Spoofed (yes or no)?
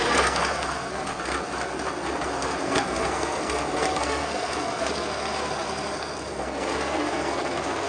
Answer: yes